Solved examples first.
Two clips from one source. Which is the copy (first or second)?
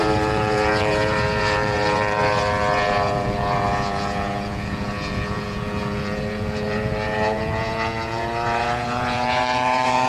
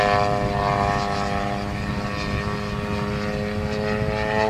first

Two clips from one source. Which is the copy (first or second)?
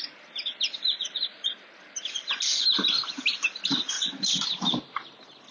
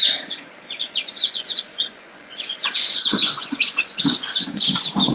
second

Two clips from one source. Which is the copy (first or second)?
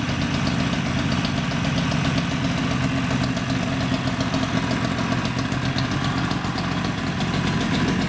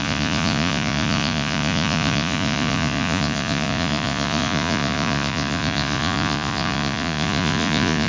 second